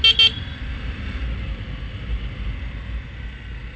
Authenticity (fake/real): real